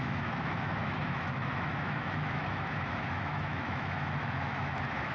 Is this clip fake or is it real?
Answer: fake